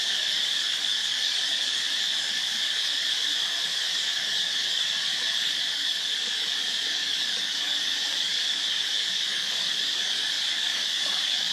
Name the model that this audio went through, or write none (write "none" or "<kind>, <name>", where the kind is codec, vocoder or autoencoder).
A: codec, DAC